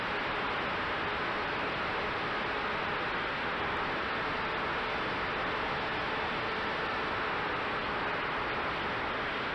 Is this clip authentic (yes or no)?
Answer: yes